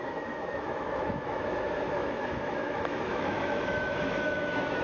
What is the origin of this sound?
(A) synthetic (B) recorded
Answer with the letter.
A